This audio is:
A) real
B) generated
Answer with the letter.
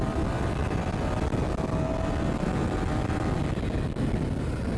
A